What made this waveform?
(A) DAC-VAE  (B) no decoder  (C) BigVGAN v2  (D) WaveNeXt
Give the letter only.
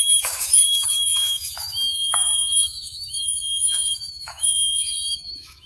A